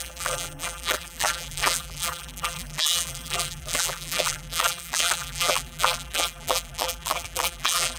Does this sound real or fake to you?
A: fake